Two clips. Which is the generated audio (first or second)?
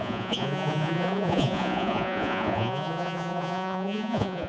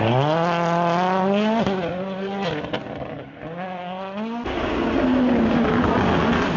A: first